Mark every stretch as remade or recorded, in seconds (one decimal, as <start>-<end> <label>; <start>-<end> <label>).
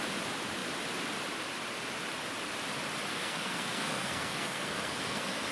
0.0-3.1 recorded; 3.1-5.5 remade